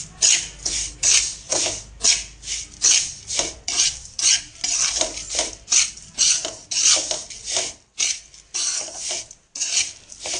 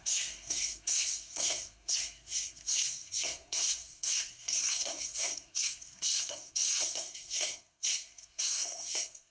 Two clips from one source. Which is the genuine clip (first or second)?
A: first